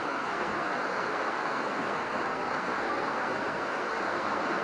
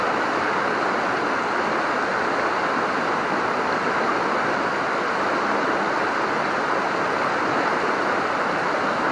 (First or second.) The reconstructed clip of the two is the first